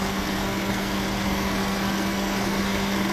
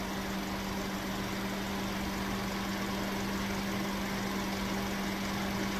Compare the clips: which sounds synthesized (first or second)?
first